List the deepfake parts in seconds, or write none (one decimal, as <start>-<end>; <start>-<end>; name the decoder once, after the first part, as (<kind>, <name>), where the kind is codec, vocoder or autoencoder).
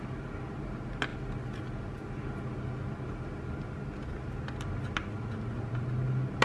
none